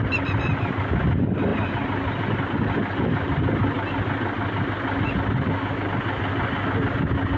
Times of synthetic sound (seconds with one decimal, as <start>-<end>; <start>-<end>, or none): none